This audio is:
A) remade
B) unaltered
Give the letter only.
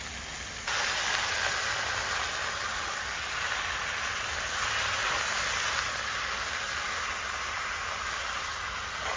B